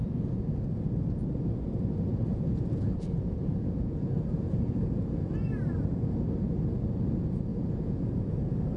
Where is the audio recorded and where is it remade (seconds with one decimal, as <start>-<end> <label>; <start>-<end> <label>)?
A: 0.0-0.7 remade; 0.7-2.3 recorded; 2.3-5.3 remade; 5.3-7.5 recorded; 7.5-8.8 remade